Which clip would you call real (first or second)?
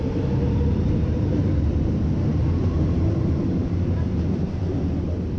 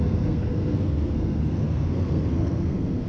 first